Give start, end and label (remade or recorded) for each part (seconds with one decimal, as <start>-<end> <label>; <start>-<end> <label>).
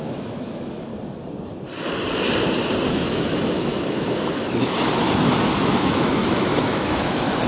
0.0-0.9 remade; 0.9-2.9 recorded; 2.9-5.0 remade; 5.0-5.6 recorded; 5.6-7.5 remade